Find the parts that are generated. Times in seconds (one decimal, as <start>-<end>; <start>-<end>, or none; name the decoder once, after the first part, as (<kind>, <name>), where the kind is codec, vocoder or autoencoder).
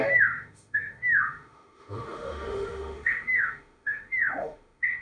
0.0-5.0 (autoencoder, DAC-VAE)